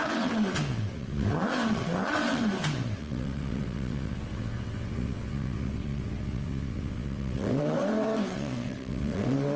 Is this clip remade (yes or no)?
yes